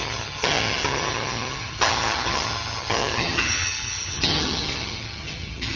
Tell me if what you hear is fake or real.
fake